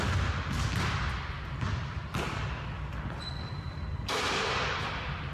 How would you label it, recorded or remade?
recorded